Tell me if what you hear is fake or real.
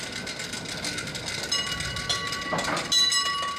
real